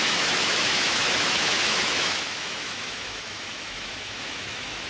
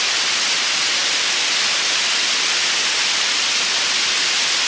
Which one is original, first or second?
second